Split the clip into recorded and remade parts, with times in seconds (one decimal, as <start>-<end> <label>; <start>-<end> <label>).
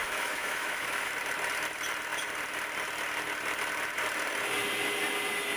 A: 0.0-1.1 remade; 1.1-5.6 recorded